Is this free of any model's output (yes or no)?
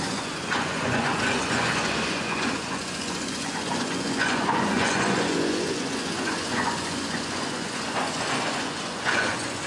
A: no